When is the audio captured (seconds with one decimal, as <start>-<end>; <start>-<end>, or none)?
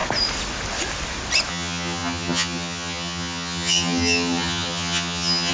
0.0-1.5